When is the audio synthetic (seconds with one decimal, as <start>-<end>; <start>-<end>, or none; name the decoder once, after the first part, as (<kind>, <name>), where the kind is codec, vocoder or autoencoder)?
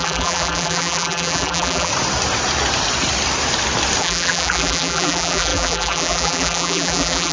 0.0-1.9 (vocoder, BigVGAN v2); 4.0-7.3